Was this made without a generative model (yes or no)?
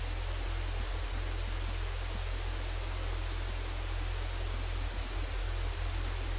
yes